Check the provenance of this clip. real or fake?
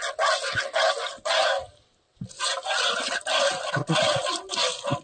real